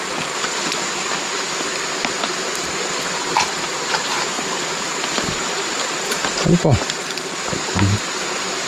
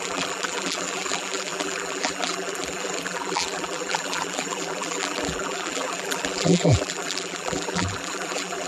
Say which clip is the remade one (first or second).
second